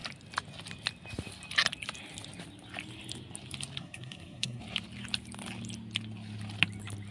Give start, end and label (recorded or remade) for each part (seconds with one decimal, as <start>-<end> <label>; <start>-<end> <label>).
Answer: 0.0-3.8 recorded; 3.8-4.6 remade; 4.6-7.1 recorded